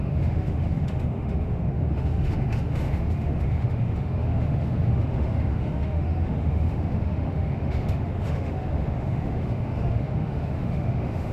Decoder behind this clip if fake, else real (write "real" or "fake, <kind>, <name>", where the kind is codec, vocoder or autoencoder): fake, autoencoder, DAC-VAE